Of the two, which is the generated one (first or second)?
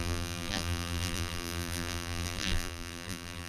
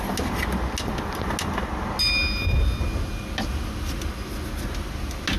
first